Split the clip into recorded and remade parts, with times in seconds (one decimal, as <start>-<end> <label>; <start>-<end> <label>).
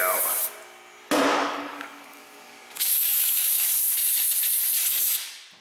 0.0-1.4 recorded; 1.4-3.6 remade; 3.6-5.6 recorded